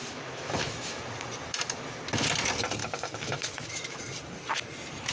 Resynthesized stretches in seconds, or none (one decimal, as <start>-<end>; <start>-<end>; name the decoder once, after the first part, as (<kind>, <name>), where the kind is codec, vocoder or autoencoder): 0.0-1.0 (autoencoder, DAC-VAE); 2.8-4.0